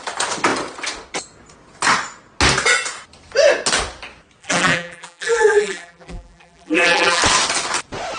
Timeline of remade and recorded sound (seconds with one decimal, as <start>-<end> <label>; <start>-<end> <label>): 0.0-4.4 recorded; 4.4-7.2 remade; 7.2-8.2 recorded